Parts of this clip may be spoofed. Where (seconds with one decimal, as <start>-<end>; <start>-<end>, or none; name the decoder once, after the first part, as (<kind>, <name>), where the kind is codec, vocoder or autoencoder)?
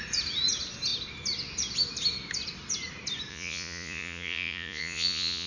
3.3-5.5 (vocoder, Vocos)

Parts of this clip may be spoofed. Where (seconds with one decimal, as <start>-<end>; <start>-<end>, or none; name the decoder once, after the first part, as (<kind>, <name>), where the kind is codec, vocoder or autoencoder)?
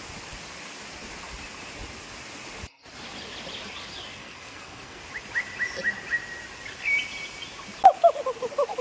4.2-5.0 (codec, SNAC)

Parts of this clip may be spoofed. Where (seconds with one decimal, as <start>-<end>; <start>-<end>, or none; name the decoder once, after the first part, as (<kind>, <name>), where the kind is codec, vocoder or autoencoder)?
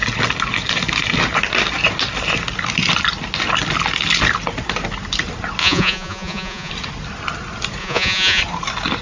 5.6-6.7 (vocoder, Vocos); 7.8-8.4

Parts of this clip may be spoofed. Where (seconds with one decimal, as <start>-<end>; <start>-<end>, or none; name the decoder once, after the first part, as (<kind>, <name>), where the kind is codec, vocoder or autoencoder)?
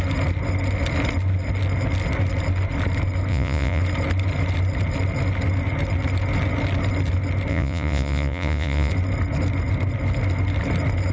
3.3-3.8 (vocoder, Vocos); 7.5-8.9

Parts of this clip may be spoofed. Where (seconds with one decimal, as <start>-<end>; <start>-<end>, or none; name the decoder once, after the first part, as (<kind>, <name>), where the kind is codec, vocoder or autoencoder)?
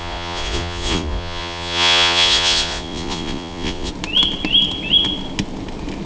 0.0-3.9 (vocoder, Vocos)